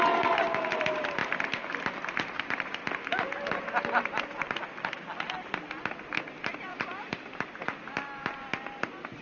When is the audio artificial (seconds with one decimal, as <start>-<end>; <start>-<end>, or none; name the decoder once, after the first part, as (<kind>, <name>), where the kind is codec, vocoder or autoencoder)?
0.0-1.2 (vocoder, BigVGAN v2); 2.3-2.8; 6.2-6.7; 8.3-9.2